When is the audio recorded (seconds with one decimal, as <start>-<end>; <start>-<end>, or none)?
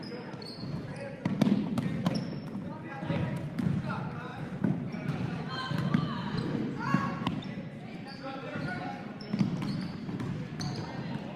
0.0-4.3; 5.5-7.3; 10.2-11.4